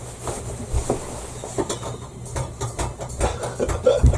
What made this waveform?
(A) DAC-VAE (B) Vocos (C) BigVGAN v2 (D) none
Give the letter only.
D